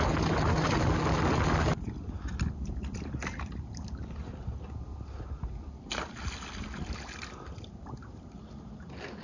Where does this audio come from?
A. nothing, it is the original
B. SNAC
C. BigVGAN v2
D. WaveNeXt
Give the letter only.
A